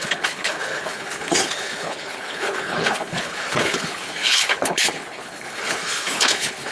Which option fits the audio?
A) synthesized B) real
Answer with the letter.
A